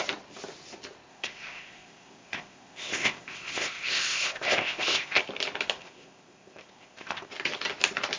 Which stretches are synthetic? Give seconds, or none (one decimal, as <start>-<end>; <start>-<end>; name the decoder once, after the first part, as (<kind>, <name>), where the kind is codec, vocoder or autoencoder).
1.1-5.2 (codec, ZipCodec); 5.8-7.3